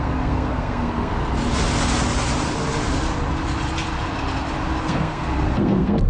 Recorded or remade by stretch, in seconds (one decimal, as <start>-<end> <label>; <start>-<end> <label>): 0.0-1.1 remade; 1.1-4.8 recorded; 4.8-6.1 remade